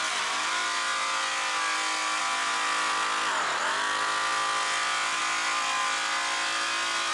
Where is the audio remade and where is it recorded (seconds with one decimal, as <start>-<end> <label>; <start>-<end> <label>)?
0.0-7.1 recorded